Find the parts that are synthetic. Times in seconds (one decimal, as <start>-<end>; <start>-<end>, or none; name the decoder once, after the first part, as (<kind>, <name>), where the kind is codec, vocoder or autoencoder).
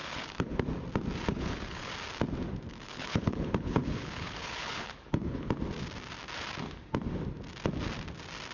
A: 0.0-0.6 (codec, HILCodec); 1.3-1.9; 2.7-5.5